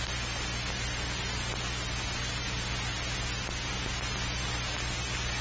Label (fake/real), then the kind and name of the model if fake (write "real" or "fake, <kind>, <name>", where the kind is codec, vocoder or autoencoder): real